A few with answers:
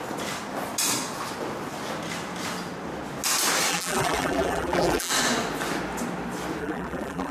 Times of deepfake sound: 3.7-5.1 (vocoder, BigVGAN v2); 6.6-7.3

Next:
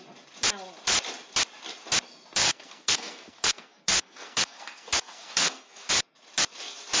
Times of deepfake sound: 2.4-5.9 (codec, SNAC)

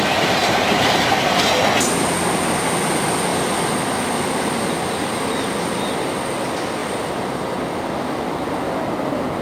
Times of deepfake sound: 0.4-1.0 (vocoder, BigVGAN v2); 6.8-7.4